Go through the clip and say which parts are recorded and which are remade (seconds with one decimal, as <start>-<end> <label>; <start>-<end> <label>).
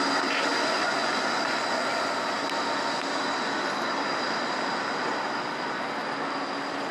0.0-0.5 recorded; 0.5-1.9 remade; 1.9-6.9 recorded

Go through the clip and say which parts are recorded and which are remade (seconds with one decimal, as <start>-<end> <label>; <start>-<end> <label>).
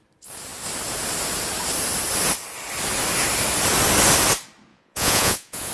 0.0-4.7 recorded; 4.7-5.7 remade